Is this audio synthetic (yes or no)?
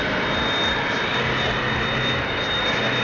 no